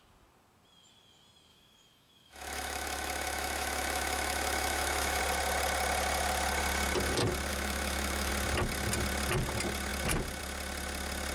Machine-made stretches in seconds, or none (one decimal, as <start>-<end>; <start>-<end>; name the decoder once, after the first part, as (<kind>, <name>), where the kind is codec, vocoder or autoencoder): 1.5-5.2 (autoencoder, DAC-VAE); 7.5-8.3